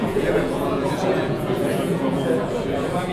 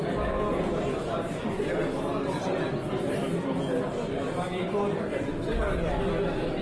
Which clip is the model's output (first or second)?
first